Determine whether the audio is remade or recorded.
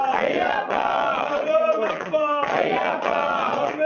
remade